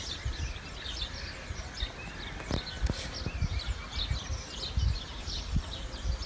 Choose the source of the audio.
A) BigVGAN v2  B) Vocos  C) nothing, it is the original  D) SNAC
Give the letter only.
C